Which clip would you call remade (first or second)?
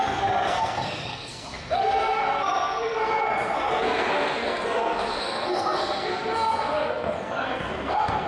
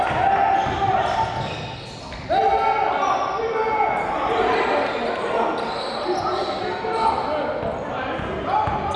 first